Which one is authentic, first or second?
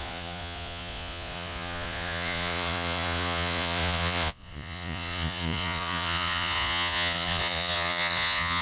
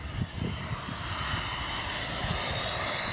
second